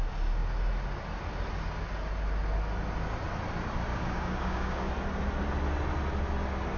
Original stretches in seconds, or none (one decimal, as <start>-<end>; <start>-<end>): 0.0-3.9; 4.9-6.8